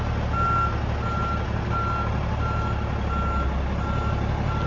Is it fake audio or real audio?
real